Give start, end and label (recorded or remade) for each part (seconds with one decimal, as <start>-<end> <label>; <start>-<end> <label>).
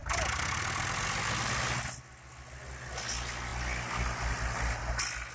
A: 0.0-5.3 recorded